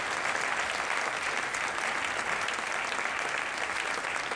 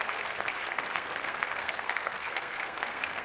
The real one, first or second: first